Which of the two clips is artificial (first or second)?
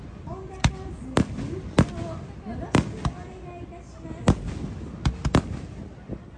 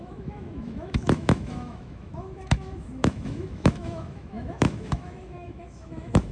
second